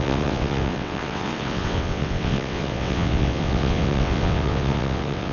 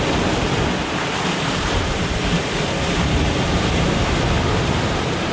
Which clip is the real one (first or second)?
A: second